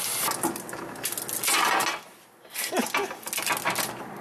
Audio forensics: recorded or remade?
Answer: recorded